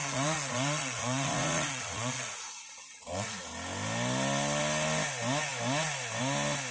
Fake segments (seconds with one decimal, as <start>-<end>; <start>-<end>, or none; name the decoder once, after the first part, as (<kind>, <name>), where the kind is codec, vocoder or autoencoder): 0.0-3.4 (vocoder, Vocos)